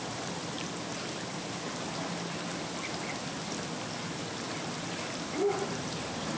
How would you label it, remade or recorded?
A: recorded